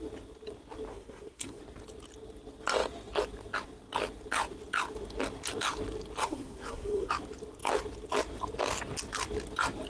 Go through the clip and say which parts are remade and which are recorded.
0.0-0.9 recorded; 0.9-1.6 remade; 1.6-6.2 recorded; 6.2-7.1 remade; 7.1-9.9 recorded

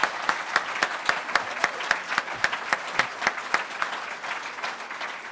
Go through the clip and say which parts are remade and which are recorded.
0.0-5.3 recorded